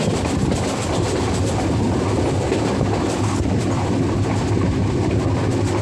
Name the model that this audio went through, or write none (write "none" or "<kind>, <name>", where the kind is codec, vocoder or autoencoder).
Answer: none